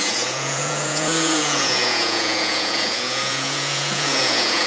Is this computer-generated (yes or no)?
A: yes